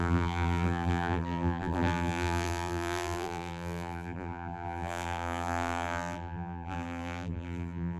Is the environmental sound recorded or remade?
remade